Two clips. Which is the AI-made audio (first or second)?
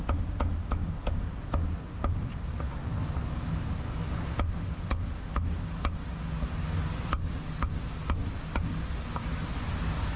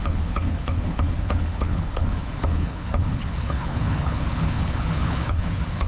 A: second